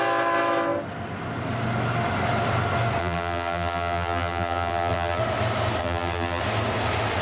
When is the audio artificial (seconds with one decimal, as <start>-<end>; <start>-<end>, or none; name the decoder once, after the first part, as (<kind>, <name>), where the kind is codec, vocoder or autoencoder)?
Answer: 3.0-5.2 (vocoder, BigVGAN v2); 5.8-6.4